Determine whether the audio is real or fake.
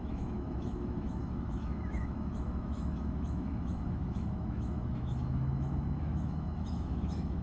fake